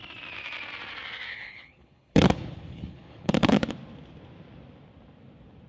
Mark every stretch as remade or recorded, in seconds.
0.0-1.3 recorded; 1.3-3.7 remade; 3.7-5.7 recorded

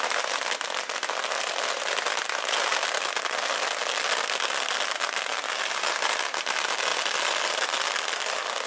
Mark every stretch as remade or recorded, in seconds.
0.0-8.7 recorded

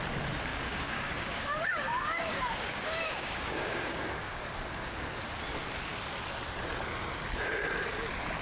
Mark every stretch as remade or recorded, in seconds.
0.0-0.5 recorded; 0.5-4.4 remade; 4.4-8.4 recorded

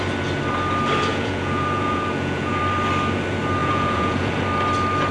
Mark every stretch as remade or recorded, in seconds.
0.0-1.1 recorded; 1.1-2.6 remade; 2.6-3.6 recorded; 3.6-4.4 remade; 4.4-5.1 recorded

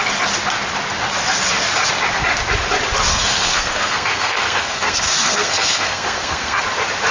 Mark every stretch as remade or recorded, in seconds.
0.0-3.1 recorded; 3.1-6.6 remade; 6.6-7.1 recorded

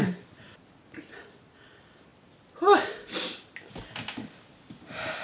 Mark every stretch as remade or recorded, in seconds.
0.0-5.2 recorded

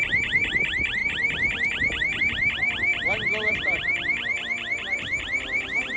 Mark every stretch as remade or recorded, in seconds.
0.0-6.0 remade